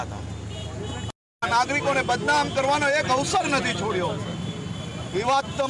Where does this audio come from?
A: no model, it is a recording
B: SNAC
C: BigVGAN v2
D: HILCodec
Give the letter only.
A